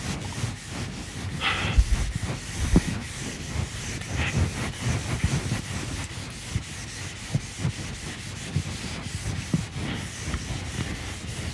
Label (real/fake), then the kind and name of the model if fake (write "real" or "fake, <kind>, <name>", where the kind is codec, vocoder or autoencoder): real